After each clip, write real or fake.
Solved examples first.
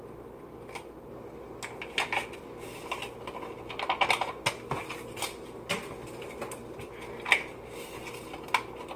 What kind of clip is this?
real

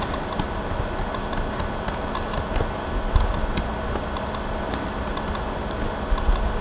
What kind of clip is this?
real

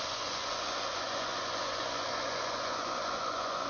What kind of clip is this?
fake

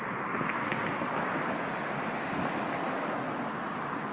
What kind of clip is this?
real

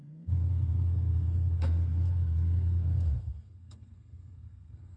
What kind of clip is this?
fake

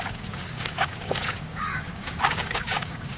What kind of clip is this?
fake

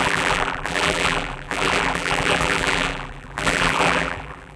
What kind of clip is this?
fake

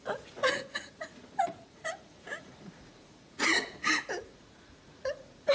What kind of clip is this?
fake